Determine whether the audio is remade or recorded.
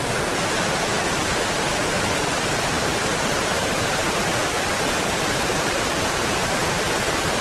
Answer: remade